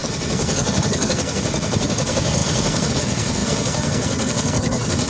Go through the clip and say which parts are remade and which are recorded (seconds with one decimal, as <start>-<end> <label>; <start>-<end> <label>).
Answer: 0.0-5.1 remade